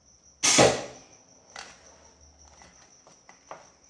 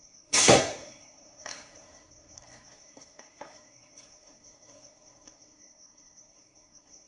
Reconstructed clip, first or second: second